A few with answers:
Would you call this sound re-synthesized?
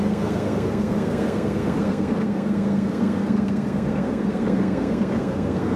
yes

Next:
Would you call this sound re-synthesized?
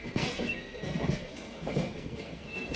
yes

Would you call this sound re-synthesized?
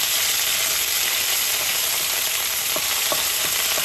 no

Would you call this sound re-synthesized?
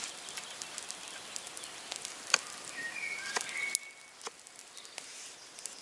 no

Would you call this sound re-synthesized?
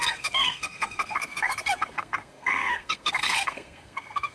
yes